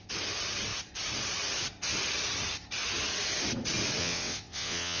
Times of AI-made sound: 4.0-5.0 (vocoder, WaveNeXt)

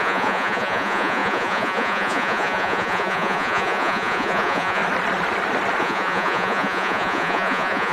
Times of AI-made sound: 0.0-4.8 (vocoder, Vocos); 5.8-7.9

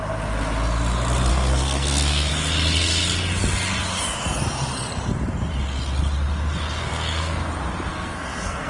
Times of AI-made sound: 1.3-2.3 (codec, SNAC); 6.8-7.5; 7.9-8.7